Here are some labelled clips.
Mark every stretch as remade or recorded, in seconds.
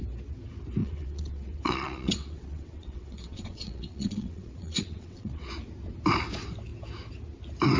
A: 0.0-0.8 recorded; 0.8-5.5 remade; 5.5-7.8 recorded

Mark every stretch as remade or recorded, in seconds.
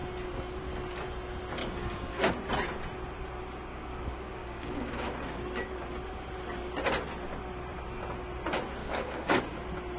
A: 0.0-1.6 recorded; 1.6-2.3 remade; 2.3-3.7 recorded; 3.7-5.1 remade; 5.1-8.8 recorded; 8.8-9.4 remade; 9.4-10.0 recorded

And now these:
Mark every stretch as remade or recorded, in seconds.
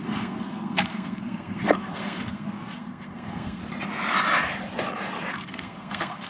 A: 0.0-3.6 remade; 3.6-5.3 recorded; 5.3-6.3 remade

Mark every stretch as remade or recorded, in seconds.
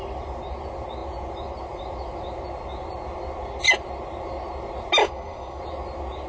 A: 0.0-5.0 recorded; 5.0-5.6 remade; 5.6-6.3 recorded